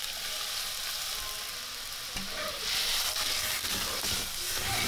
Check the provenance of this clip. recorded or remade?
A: recorded